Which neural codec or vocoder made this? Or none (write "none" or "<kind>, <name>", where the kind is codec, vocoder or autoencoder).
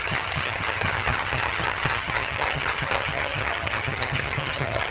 vocoder, HiFi-GAN